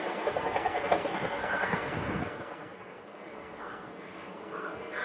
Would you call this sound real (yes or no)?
no